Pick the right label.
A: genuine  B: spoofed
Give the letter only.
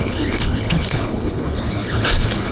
B